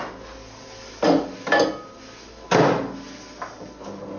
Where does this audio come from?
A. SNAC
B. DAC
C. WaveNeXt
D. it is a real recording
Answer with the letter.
D